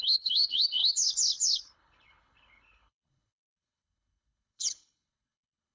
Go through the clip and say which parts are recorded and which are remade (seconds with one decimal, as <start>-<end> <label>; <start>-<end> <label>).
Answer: 0.0-5.7 remade